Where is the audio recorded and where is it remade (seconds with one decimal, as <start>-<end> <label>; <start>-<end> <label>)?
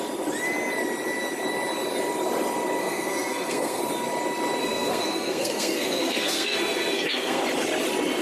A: 0.0-2.8 recorded; 2.8-3.8 remade; 3.8-4.6 recorded; 4.6-7.4 remade; 7.4-8.2 recorded